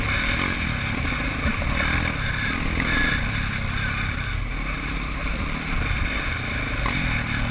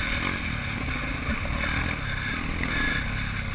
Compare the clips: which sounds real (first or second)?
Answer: second